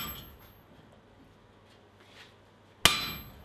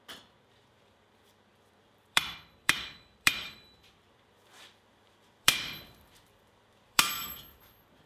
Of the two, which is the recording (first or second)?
first